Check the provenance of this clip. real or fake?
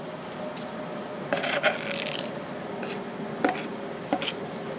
real